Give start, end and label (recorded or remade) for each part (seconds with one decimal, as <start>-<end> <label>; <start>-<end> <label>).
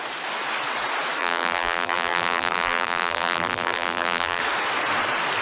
0.0-1.2 recorded; 1.2-4.4 remade; 4.4-5.4 recorded